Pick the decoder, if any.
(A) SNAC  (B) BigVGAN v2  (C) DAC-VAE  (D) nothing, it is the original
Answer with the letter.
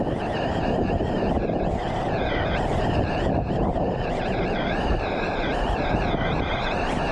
B